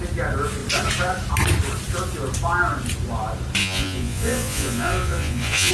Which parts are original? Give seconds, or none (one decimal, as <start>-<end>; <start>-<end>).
0.0-3.6